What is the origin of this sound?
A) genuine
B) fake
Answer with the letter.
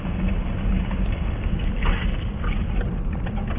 A